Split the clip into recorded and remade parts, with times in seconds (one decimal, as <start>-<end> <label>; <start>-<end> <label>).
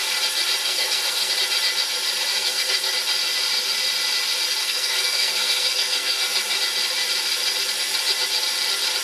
0.0-0.6 recorded; 0.6-1.3 remade; 1.3-2.3 recorded; 2.3-2.9 remade; 2.9-4.6 recorded; 4.6-6.6 remade; 6.6-9.0 recorded